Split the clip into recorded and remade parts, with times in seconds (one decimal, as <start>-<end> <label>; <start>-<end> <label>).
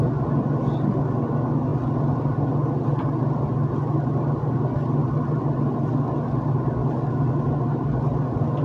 0.0-5.0 recorded; 5.0-5.9 remade; 5.9-8.6 recorded